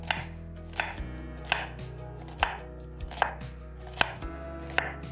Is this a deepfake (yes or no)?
no